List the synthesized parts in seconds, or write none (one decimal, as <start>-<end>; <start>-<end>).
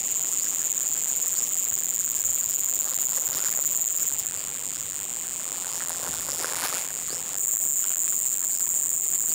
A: 0.0-9.3